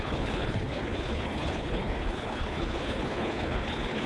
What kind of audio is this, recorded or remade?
remade